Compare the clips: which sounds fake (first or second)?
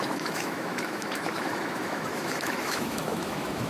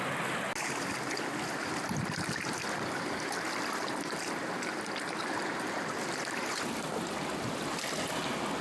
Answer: first